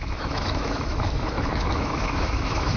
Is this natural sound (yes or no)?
no